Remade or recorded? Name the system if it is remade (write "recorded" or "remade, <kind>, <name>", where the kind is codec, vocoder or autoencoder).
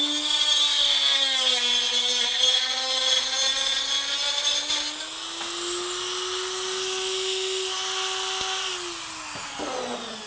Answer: recorded